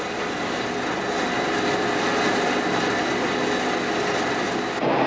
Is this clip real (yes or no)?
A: yes